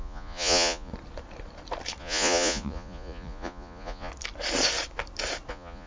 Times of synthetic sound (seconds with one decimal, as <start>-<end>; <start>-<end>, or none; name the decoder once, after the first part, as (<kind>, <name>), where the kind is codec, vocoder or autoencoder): 0.0-0.9 (vocoder, Vocos); 2.0-4.1; 5.5-5.9